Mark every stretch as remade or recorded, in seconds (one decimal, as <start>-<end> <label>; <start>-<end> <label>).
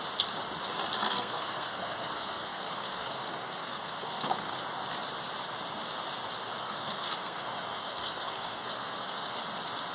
0.0-1.0 recorded; 1.0-4.6 remade; 4.6-6.6 recorded; 6.6-9.4 remade; 9.4-9.9 recorded